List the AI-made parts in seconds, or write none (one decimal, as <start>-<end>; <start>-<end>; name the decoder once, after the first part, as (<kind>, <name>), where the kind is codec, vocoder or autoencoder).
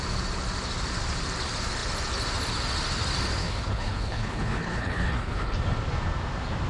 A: 3.4-5.6 (codec, HILCodec)